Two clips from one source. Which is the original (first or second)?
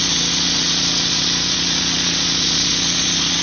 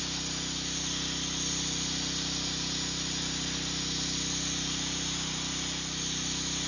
second